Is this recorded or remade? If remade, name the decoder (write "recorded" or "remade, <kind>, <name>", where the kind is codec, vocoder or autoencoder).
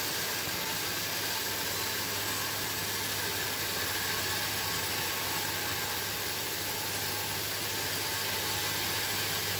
recorded